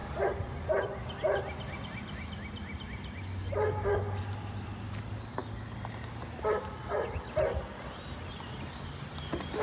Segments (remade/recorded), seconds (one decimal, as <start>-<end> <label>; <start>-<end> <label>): 0.0-9.6 recorded

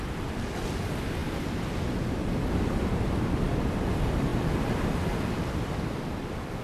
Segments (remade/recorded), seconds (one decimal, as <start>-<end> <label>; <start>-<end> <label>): 0.0-4.3 recorded; 4.3-6.6 remade

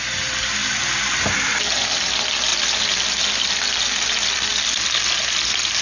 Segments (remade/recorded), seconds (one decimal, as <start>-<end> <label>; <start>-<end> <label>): 0.0-5.8 recorded